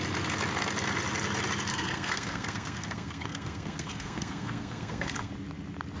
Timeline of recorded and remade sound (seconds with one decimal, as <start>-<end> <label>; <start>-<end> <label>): 0.0-1.7 recorded; 1.7-5.3 remade; 5.3-6.0 recorded